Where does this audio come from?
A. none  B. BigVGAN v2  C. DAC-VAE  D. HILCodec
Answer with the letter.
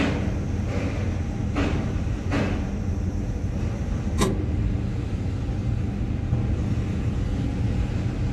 A